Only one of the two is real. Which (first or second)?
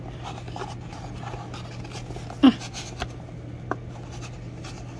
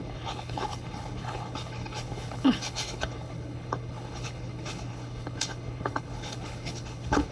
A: first